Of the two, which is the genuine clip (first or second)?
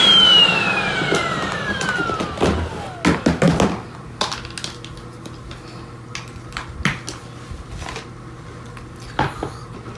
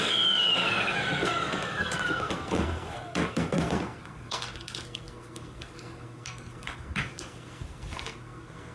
first